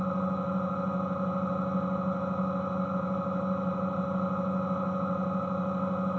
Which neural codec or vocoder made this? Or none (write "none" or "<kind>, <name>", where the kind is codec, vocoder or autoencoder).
none